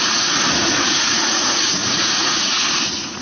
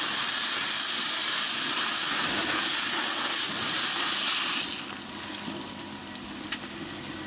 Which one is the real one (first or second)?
second